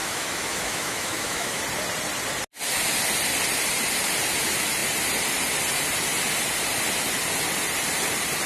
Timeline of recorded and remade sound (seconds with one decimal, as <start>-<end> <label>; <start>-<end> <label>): 0.0-1.6 remade; 1.6-8.5 recorded